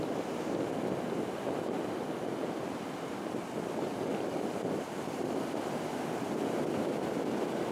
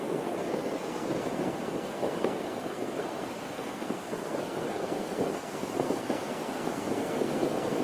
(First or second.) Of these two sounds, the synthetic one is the second